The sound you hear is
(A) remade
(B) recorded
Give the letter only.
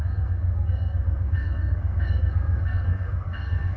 A